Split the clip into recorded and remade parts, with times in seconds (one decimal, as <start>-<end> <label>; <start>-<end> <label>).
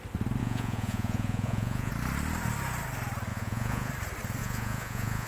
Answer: 0.0-0.4 recorded; 0.4-1.9 remade; 1.9-3.3 recorded; 3.3-3.9 remade; 3.9-4.4 recorded; 4.4-5.3 remade